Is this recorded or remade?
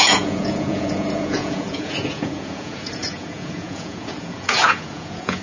remade